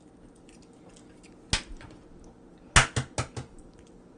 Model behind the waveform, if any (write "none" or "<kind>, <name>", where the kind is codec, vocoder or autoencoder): none